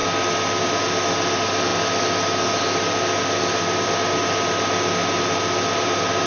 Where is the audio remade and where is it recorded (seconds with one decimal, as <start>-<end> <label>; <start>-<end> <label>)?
0.0-6.3 recorded